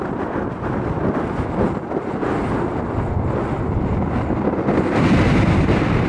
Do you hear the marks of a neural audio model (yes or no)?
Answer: no